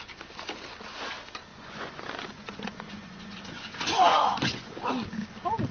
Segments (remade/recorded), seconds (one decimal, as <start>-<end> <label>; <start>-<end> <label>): 0.0-1.5 recorded; 1.5-4.9 remade; 4.9-5.7 recorded